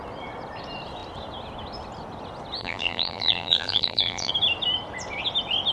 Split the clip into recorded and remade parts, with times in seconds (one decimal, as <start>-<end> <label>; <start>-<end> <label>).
0.0-2.6 recorded; 2.6-4.3 remade; 4.3-5.7 recorded